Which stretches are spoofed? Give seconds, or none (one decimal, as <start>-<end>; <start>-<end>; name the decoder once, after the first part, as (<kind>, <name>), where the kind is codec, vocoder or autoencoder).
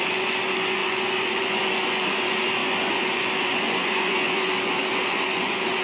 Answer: 0.0-5.8 (vocoder, Vocos)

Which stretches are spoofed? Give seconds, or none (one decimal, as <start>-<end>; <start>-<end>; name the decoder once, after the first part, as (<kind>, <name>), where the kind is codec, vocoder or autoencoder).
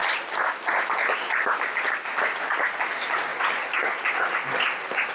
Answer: none